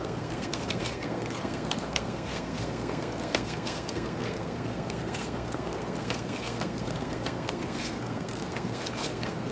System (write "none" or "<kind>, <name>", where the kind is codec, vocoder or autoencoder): codec, SNAC